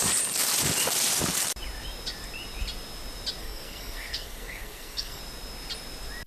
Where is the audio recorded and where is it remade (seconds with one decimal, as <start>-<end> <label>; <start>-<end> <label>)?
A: 0.0-3.4 recorded; 3.4-5.2 remade; 5.2-6.3 recorded